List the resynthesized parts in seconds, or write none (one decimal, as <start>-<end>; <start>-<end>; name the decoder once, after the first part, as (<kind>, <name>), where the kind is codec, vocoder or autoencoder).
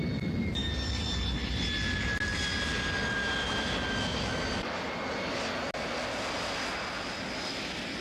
none